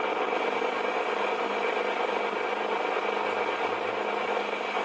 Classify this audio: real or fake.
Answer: real